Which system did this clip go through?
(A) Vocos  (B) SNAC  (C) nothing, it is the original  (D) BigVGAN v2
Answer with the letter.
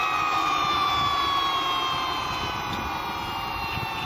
C